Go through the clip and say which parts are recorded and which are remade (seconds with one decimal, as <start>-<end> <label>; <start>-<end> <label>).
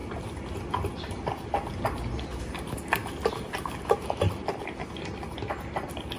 0.0-6.2 recorded